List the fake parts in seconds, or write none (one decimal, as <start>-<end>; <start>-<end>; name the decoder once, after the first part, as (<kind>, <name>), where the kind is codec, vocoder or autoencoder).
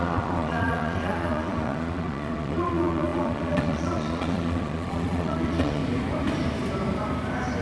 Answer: 0.0-5.8 (vocoder, Vocos)